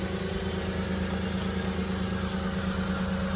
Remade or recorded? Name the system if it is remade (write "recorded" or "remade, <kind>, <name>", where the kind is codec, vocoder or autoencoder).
recorded